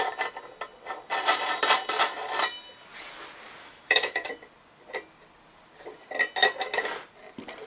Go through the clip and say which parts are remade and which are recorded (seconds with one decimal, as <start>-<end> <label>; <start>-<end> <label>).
0.0-3.6 recorded; 3.6-4.3 remade; 4.3-7.7 recorded